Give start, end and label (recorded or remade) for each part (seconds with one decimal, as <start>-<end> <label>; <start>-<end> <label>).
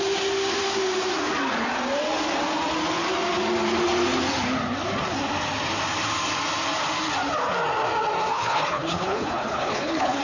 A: 0.0-8.3 recorded; 8.3-10.2 remade